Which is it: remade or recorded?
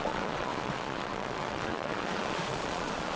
remade